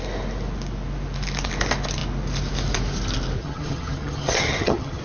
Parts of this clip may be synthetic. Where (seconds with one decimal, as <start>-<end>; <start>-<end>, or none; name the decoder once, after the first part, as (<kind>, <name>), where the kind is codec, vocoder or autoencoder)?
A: 3.4-5.0 (vocoder, HiFi-GAN)